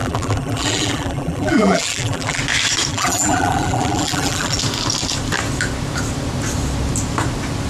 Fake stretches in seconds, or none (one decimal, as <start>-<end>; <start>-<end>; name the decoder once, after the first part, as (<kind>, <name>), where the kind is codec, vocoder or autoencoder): 0.0-2.4 (vocoder, BigVGAN v2); 2.9-4.6